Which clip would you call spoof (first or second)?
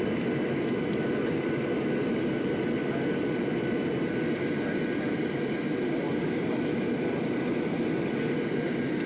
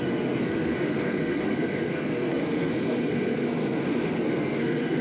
second